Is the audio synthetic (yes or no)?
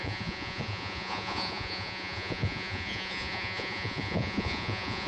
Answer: yes